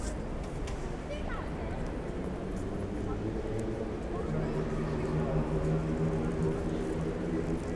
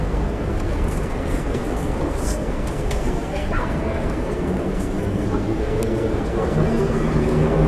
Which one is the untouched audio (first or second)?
first